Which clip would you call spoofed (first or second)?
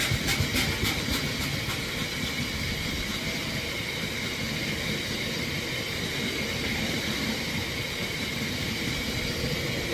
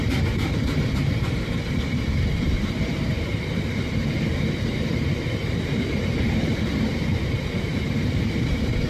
second